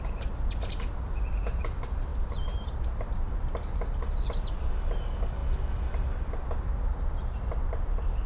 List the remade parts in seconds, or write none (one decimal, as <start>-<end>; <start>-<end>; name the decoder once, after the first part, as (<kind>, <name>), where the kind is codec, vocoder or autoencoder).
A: 2.1-3.3 (vocoder, BigVGAN v2)